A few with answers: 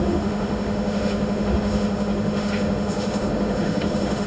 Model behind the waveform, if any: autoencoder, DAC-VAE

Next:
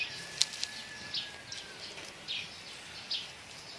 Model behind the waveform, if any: none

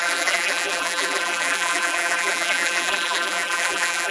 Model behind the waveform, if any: vocoder, BigVGAN v2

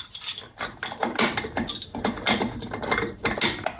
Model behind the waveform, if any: none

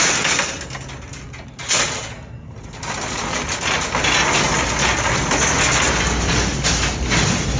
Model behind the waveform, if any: none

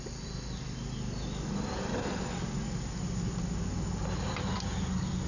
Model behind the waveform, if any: none